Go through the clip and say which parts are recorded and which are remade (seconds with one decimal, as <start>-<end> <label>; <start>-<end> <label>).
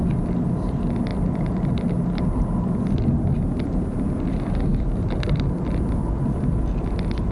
0.0-1.1 recorded; 1.1-1.8 remade; 1.8-4.7 recorded; 4.7-6.6 remade; 6.6-7.3 recorded